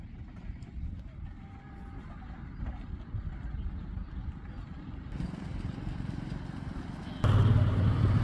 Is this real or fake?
real